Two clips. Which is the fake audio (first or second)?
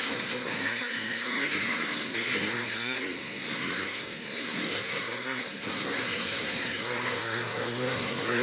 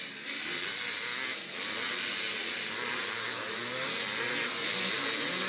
first